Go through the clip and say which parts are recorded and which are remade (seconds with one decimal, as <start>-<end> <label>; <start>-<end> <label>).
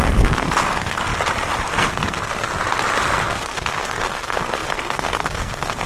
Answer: 0.0-1.1 remade; 1.1-1.7 recorded; 1.7-2.5 remade; 2.5-3.0 recorded; 3.0-5.9 remade